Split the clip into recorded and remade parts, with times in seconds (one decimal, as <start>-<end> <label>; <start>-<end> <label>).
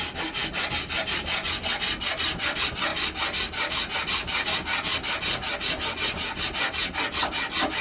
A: 0.0-7.8 recorded